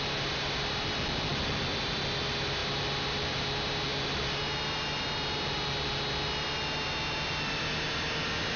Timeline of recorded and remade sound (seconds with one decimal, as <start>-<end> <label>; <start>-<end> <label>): 0.0-8.6 recorded